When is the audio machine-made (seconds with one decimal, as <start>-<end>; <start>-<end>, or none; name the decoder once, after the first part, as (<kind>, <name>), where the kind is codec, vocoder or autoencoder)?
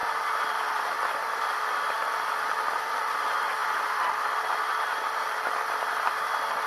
none